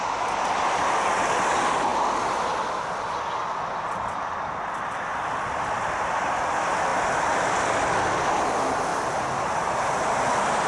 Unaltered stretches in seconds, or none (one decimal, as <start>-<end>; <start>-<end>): 0.0-10.7